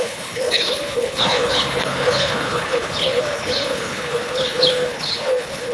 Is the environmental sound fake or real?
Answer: fake